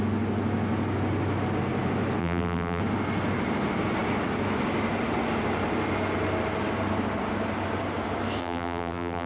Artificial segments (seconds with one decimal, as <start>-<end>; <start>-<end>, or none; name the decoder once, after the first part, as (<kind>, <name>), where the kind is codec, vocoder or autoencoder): 2.2-2.8 (vocoder, BigVGAN v2); 8.4-9.3